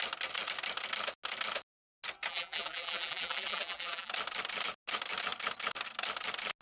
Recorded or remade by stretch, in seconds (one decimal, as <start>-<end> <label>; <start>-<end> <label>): 0.0-2.3 recorded; 2.3-4.1 remade; 4.1-6.6 recorded